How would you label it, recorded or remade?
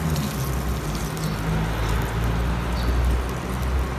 recorded